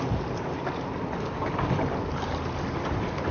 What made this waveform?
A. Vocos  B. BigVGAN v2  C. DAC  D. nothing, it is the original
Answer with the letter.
D